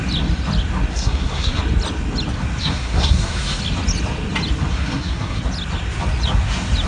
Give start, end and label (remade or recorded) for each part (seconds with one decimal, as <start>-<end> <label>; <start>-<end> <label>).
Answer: 0.0-0.9 recorded; 0.9-1.6 remade; 1.6-2.6 recorded; 2.6-3.6 remade; 3.6-4.7 recorded; 4.7-5.4 remade; 5.4-6.9 recorded

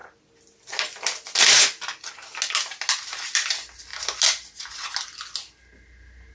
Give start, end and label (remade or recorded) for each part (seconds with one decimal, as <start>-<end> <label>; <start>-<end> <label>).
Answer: 0.0-6.3 recorded

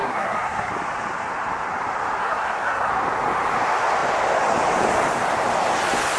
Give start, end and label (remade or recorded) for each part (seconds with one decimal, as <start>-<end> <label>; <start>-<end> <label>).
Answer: 0.0-0.7 remade; 0.7-2.2 recorded; 2.2-2.9 remade; 2.9-6.2 recorded

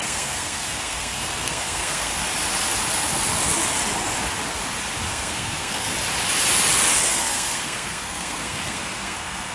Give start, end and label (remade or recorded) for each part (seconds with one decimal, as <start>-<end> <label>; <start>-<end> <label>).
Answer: 0.0-2.1 remade; 2.1-5.1 recorded; 5.1-5.9 remade; 5.9-7.1 recorded; 7.1-9.5 remade

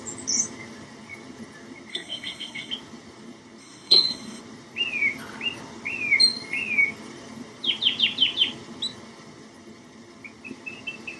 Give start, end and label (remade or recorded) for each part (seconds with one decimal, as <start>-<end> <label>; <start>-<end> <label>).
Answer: 0.0-1.9 recorded; 1.9-2.7 remade; 2.7-3.6 recorded; 3.6-4.4 remade; 4.4-11.2 recorded